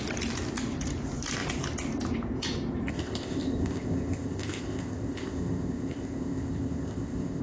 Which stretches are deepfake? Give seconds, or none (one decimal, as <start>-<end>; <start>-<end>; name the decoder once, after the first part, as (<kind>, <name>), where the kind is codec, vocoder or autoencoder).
2.9-7.4 (codec, ZipCodec)